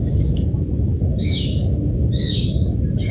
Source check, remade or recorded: remade